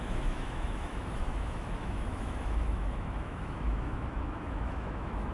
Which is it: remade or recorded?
remade